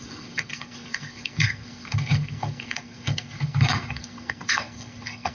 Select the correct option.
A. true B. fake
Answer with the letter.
B